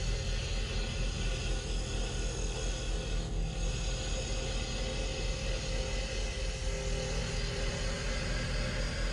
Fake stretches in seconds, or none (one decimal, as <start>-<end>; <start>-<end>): none